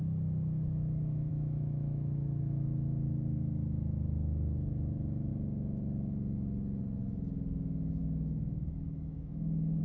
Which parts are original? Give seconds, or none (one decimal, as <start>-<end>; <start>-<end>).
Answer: 0.0-1.3; 5.3-8.0